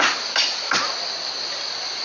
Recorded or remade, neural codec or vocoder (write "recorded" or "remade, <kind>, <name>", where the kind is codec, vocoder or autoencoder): recorded